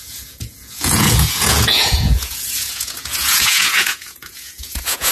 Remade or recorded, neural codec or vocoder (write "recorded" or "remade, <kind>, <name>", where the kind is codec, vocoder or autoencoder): remade, vocoder, Vocos